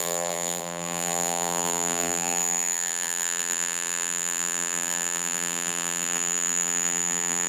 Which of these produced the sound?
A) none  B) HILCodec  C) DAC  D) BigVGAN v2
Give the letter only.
D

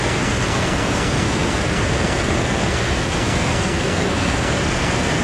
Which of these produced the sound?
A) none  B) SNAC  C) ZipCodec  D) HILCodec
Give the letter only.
B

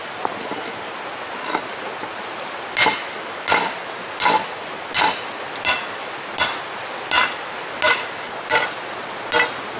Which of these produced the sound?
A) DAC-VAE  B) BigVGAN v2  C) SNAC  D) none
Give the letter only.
D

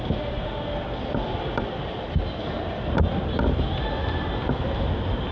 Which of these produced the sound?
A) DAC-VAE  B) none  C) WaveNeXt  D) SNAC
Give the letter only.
B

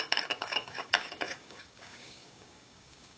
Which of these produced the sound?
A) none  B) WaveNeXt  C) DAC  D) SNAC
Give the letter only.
C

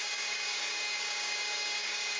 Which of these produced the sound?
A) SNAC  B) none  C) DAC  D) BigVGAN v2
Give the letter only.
C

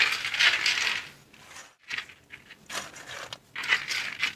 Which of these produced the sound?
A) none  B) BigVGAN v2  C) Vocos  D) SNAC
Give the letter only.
A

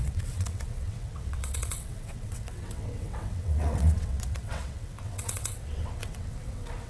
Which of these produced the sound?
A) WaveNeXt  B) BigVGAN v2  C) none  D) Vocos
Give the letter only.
A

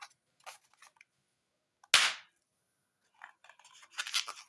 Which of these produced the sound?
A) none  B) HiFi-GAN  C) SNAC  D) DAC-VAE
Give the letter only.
A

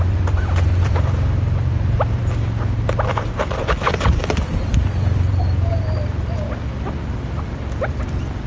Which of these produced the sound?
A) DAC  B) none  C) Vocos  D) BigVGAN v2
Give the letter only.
D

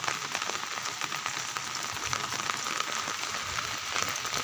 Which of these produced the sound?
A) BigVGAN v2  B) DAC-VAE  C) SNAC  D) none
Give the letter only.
D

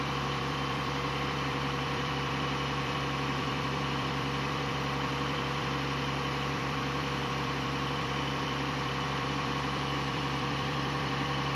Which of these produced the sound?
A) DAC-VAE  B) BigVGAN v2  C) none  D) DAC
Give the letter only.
B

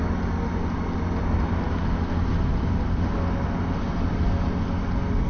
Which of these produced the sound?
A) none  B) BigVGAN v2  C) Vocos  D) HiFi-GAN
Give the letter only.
A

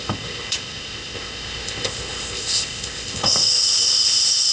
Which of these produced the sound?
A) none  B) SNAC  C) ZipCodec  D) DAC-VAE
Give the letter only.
C